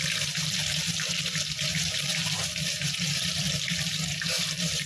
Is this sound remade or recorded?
remade